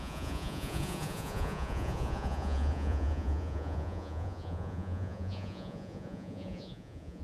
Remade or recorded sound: remade